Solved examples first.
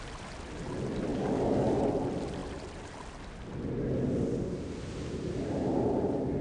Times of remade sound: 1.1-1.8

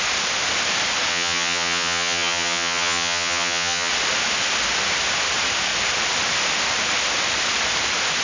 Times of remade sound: 1.1-3.9